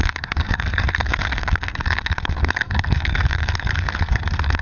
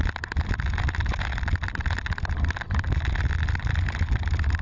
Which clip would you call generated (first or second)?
first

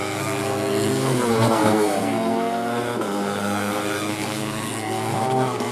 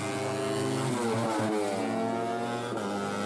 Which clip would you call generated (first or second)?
first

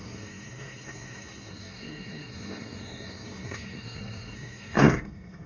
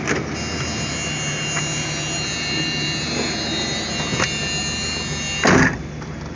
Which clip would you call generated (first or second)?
first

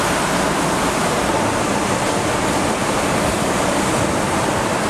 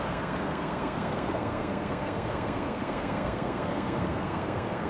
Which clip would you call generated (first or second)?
second